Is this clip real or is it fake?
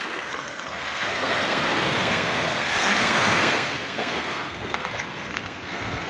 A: fake